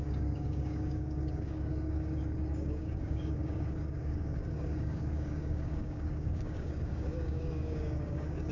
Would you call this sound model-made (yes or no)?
yes